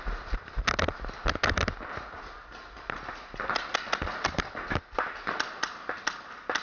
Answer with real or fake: real